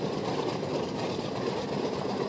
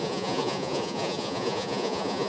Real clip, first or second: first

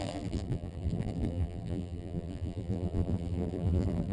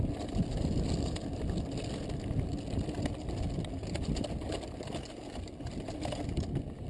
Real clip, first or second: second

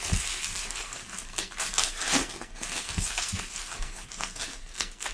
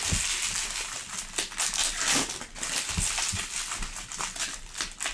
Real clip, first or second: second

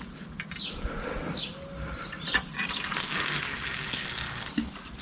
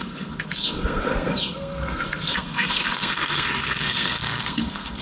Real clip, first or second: first